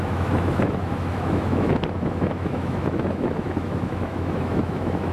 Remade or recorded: remade